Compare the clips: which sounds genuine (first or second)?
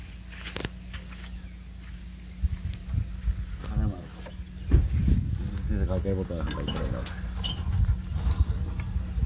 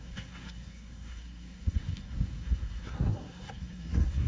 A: first